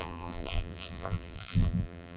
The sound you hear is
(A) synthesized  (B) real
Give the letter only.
A